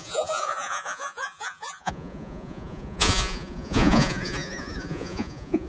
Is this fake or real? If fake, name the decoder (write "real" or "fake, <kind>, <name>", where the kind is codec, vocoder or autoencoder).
fake, vocoder, Vocos